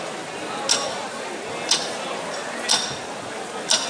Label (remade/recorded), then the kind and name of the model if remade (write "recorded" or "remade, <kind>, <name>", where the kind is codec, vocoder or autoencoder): recorded